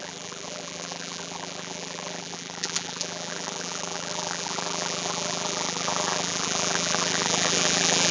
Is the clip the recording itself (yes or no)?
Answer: no